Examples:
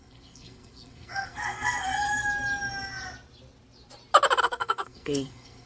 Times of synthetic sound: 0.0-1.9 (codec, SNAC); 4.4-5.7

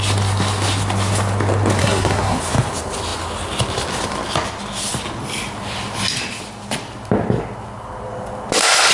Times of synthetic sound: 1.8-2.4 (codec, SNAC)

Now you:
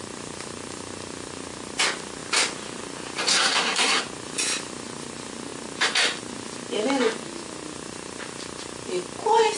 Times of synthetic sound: 3.3-4.0 (codec, SNAC)

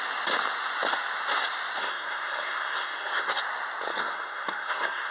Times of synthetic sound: 1.8-3.4 (codec, SNAC); 3.9-5.1